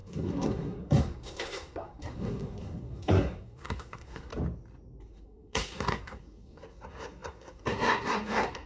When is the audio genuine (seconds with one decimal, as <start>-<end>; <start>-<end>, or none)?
4.3-5.0